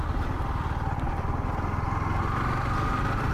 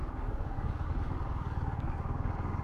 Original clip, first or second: first